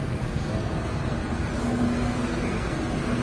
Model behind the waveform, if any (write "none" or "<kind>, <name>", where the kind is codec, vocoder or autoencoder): codec, SNAC